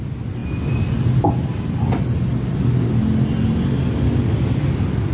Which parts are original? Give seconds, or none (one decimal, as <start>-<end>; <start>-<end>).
0.0-5.1

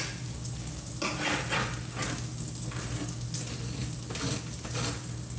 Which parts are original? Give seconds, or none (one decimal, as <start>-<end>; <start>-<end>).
0.0-5.4